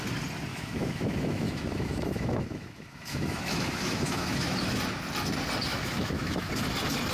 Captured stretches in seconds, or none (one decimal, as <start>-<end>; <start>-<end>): 0.0-0.5; 4.8-5.7; 6.5-7.1